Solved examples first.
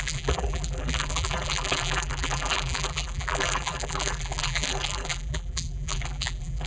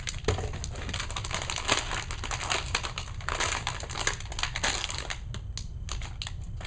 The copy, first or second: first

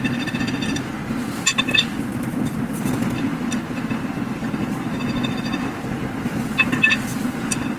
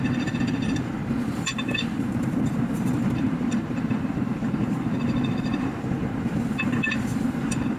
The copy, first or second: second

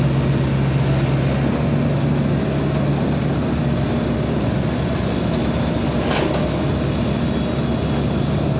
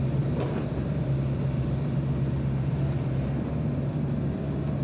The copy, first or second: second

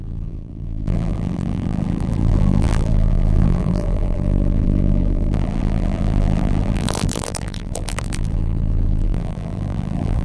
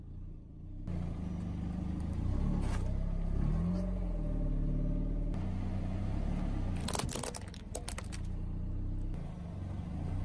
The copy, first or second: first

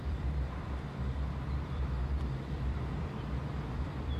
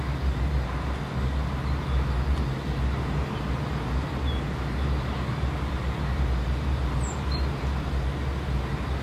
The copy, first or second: first